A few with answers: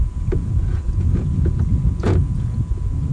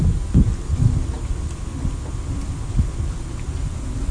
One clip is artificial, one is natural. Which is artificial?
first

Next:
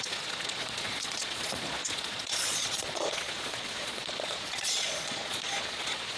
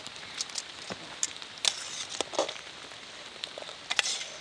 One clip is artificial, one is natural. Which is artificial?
first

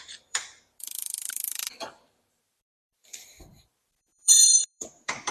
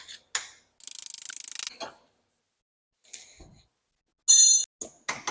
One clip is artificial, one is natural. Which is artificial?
first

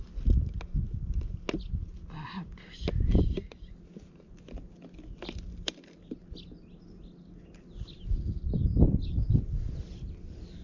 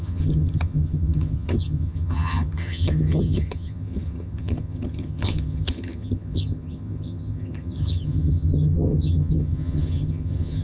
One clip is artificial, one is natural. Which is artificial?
second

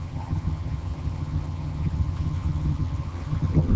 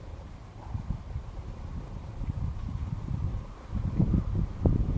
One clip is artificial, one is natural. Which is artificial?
first